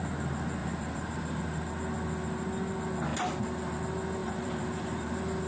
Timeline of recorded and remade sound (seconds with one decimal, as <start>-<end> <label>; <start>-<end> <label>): 0.0-0.6 recorded; 0.6-1.4 remade; 1.4-4.2 recorded; 4.2-5.0 remade; 5.0-5.5 recorded

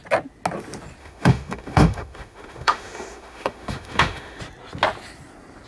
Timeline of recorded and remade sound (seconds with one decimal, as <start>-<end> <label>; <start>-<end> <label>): 0.0-1.0 recorded; 1.0-4.4 remade; 4.4-5.7 recorded

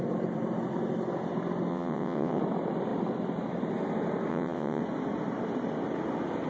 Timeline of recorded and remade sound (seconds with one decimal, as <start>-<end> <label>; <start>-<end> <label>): 0.0-1.7 recorded; 1.7-2.4 remade; 2.4-4.3 recorded; 4.3-4.8 remade; 4.8-6.5 recorded

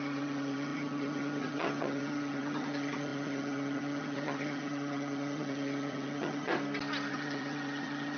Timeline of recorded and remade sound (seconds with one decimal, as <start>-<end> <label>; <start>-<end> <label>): 0.0-6.5 remade; 6.5-7.1 recorded; 7.1-8.2 remade

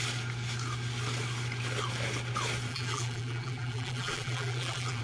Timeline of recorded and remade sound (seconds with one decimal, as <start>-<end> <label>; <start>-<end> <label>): 0.0-2.7 recorded; 2.7-5.0 remade